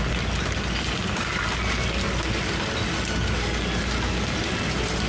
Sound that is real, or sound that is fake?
real